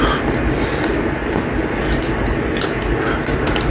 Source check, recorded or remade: recorded